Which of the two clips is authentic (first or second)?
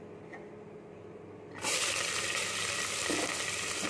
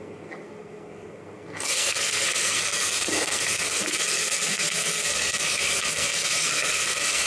first